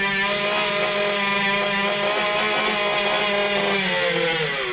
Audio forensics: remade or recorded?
recorded